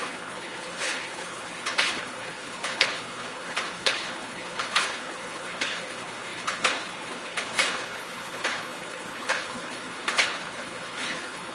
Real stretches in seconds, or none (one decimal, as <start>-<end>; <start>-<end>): none